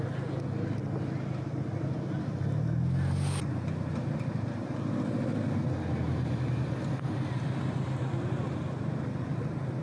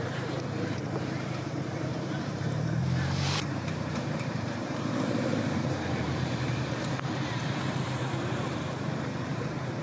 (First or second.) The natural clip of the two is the first